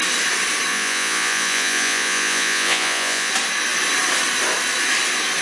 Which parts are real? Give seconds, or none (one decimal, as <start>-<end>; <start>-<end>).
0.0-0.7; 3.3-5.4